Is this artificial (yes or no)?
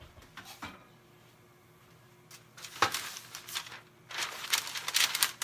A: no